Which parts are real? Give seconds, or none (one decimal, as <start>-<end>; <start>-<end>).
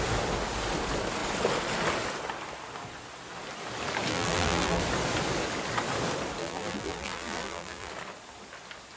0.0-4.1; 4.8-6.4; 7.9-9.0